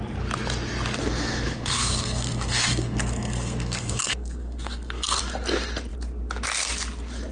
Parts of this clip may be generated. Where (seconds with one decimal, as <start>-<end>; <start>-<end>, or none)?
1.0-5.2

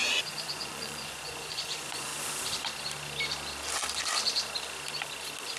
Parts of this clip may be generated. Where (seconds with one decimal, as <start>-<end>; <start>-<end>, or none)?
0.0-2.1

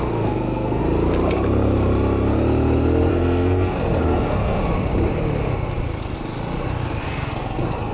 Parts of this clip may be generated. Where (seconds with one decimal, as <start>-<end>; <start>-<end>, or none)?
0.0-0.8; 3.1-4.6; 7.0-7.9

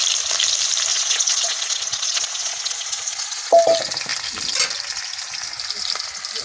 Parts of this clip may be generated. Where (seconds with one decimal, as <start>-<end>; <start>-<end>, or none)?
0.9-3.5

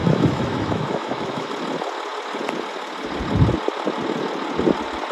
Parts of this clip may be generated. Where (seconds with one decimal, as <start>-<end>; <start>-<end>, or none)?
0.0-1.5

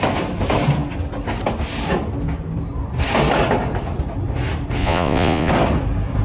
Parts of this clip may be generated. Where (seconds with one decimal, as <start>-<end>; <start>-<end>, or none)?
4.8-5.5

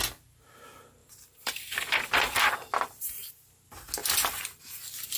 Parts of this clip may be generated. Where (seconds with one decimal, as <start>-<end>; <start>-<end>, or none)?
1.0-3.3; 4.0-5.2